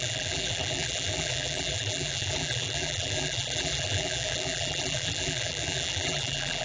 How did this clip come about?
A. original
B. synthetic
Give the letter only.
B